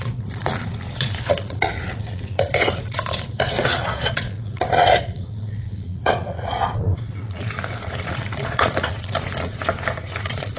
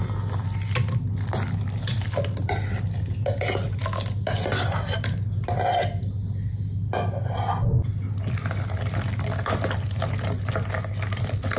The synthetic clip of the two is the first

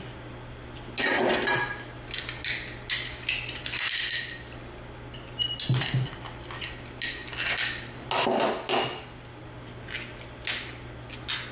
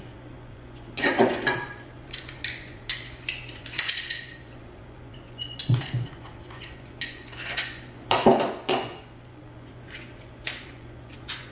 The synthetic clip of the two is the second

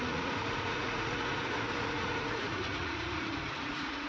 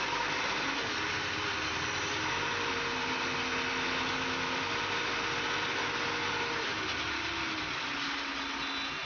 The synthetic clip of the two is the first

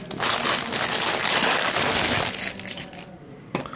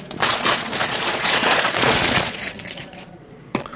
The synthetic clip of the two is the second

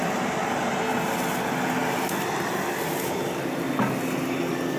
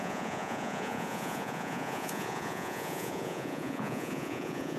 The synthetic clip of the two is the second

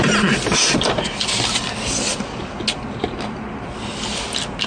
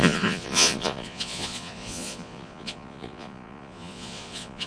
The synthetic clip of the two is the second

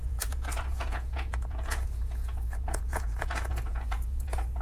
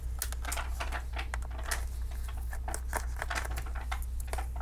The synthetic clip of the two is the first